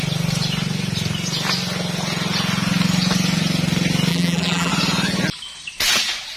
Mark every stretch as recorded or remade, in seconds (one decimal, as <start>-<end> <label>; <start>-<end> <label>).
0.0-4.1 recorded; 4.1-4.7 remade; 4.7-6.4 recorded